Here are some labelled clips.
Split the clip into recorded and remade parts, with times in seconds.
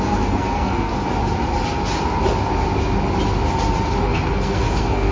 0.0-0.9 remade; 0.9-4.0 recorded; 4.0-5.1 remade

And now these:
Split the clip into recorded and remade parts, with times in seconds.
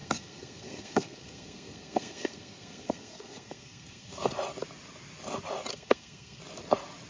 0.0-4.3 remade; 4.3-5.7 recorded; 5.7-6.4 remade; 6.4-7.1 recorded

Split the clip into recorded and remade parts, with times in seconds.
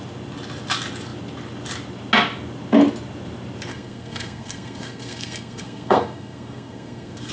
0.0-3.7 recorded; 3.7-7.3 remade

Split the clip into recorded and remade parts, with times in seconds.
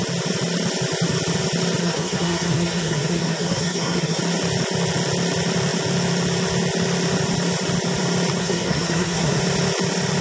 0.0-1.8 recorded; 1.8-4.2 remade; 4.2-8.4 recorded; 8.4-9.4 remade; 9.4-10.2 recorded